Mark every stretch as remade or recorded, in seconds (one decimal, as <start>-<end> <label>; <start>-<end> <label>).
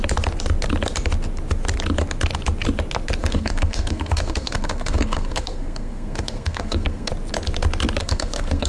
0.0-3.2 recorded; 3.2-7.1 remade; 7.1-8.0 recorded; 8.0-8.7 remade